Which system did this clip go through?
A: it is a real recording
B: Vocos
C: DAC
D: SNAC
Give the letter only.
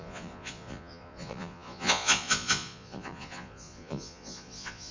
B